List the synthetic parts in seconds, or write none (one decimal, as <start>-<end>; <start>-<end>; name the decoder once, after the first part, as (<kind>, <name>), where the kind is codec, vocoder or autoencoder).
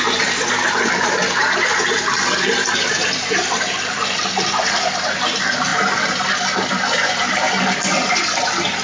0.0-8.8 (vocoder, BigVGAN v2)